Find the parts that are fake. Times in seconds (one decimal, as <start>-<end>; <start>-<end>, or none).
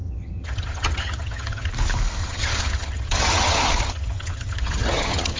0.0-1.7; 2.2-5.4